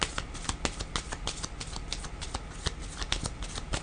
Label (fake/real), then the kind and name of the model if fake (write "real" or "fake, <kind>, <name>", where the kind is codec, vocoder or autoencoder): real